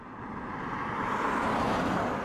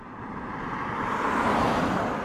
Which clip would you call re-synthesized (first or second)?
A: second